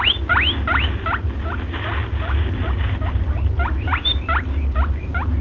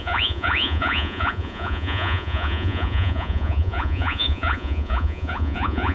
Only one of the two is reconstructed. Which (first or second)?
second